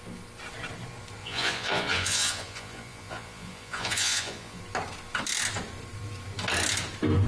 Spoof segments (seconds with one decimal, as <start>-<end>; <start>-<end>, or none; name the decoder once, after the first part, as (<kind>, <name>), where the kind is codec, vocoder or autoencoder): 1.2-4.6 (vocoder, Vocos)